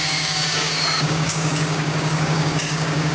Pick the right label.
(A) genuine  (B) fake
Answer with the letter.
B